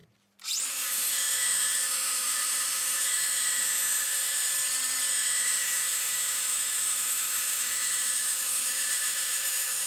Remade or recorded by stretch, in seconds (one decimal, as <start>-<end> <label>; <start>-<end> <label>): 0.0-0.7 recorded; 0.7-4.5 remade; 4.5-5.1 recorded; 5.1-9.9 remade